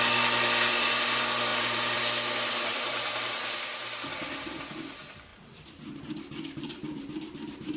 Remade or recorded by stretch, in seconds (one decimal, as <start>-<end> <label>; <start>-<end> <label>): 0.0-1.5 recorded; 1.5-2.0 remade; 2.0-2.7 recorded; 2.7-3.4 remade; 3.4-7.8 recorded